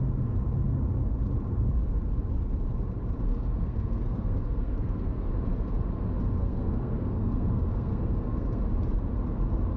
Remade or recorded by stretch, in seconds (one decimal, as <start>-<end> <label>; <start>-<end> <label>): 0.0-3.3 recorded; 3.3-5.3 remade; 5.3-6.4 recorded; 6.4-8.6 remade; 8.6-9.8 recorded